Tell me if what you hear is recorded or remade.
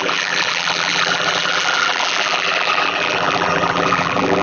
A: remade